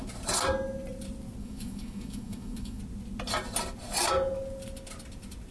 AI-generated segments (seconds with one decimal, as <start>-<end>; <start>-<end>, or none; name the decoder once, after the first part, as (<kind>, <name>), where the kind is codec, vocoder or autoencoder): 1.4-2.8 (autoencoder, DAC-VAE)